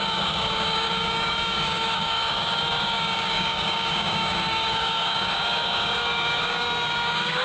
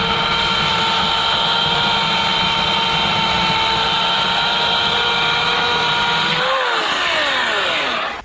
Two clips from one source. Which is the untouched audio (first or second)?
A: second